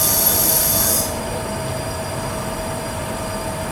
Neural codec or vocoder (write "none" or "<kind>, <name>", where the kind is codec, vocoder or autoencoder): vocoder, BigVGAN v2